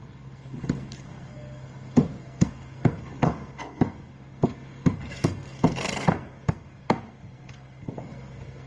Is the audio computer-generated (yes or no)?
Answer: yes